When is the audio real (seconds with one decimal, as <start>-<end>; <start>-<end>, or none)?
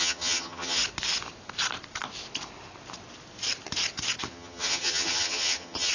0.8-4.3